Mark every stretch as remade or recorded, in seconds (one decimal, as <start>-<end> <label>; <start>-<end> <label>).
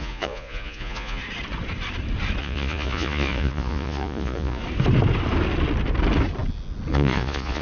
0.0-1.2 remade; 1.2-2.4 recorded; 2.4-4.6 remade; 4.6-6.9 recorded; 6.9-7.6 remade